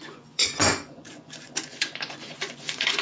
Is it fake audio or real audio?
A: fake